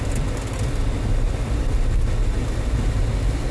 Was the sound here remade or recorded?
recorded